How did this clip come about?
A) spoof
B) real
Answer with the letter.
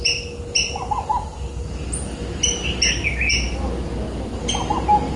B